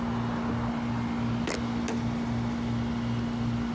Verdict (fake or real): real